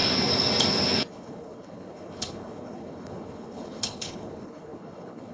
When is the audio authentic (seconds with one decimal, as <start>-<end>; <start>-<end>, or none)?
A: 0.0-1.1

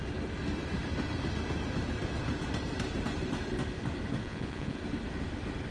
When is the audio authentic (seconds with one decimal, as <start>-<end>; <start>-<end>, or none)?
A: 0.0-4.2; 4.8-5.7

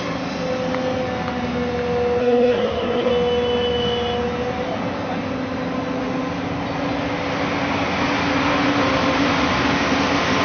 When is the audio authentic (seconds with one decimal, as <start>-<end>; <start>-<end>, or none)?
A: 0.0-2.2; 3.1-10.4

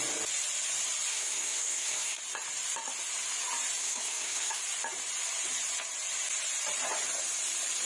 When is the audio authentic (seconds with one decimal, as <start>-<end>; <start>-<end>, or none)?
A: 0.0-1.1; 2.2-3.8; 4.6-7.9

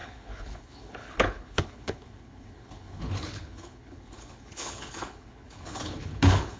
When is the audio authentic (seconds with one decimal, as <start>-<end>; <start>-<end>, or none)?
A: none

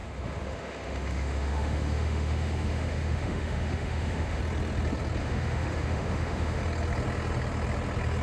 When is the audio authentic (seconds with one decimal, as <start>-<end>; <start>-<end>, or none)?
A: 4.4-5.2; 6.6-8.2